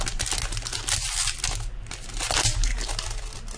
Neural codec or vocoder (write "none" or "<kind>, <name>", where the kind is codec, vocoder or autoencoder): none